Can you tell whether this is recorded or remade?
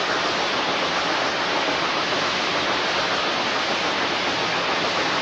recorded